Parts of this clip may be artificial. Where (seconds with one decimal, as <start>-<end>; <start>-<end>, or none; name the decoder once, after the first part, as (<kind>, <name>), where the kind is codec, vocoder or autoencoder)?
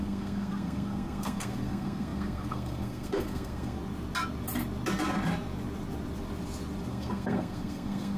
0.0-3.8 (codec, SNAC); 6.9-8.2